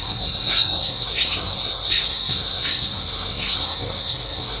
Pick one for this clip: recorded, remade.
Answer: remade